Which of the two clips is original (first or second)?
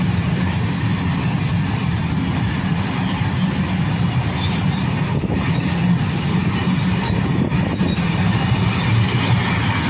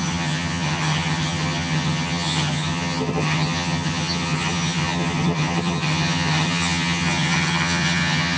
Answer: first